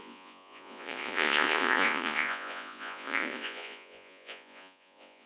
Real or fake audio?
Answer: fake